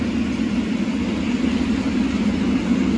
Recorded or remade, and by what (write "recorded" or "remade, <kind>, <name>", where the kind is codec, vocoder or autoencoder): recorded